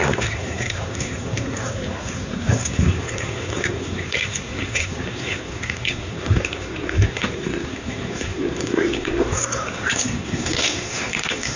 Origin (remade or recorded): remade